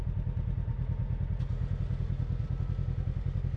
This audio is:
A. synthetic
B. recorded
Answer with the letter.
B